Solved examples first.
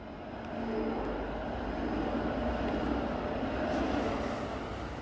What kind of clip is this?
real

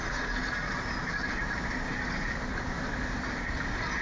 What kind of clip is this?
real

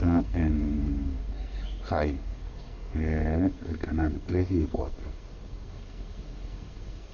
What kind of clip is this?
fake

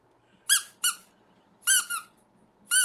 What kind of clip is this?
real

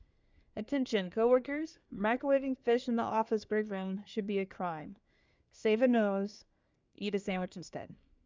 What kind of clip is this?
fake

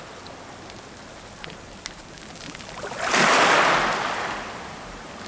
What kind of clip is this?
real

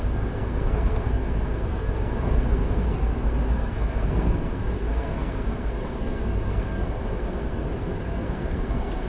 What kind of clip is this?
fake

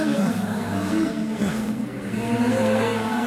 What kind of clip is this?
fake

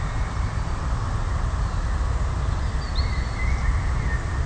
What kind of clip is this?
real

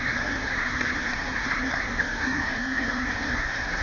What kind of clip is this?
fake